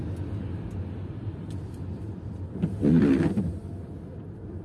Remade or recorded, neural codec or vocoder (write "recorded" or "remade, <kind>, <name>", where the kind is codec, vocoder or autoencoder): recorded